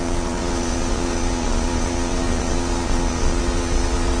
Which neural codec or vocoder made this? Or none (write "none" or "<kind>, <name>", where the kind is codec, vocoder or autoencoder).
vocoder, Vocos